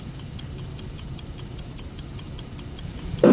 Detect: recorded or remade remade